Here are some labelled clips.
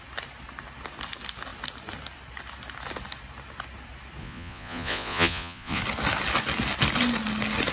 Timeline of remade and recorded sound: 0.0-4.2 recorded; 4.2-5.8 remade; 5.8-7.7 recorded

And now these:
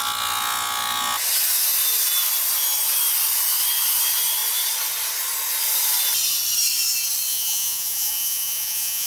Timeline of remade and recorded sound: 0.0-7.3 recorded; 7.3-9.1 remade

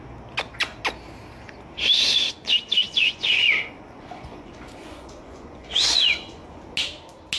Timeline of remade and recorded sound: 0.0-2.8 recorded; 2.8-6.6 remade; 6.6-7.4 recorded

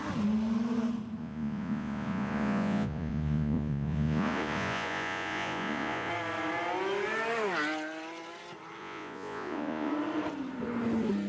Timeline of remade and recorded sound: 0.0-1.2 recorded; 1.2-6.1 remade; 6.1-8.8 recorded; 8.8-9.9 remade; 9.9-11.3 recorded